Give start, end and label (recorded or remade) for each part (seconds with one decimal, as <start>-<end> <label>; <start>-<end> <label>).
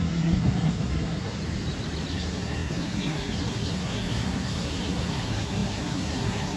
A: 0.0-1.4 remade; 1.4-2.1 recorded; 2.1-6.6 remade